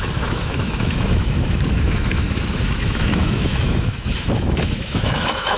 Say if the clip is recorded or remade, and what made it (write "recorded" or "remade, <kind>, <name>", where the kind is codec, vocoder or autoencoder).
remade, autoencoder, DAC-VAE